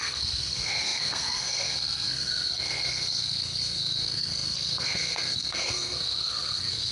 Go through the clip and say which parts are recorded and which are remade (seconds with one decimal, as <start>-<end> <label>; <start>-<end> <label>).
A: 0.0-6.9 remade